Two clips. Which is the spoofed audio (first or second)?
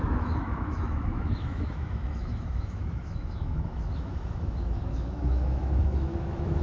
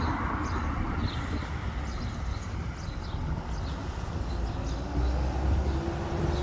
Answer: first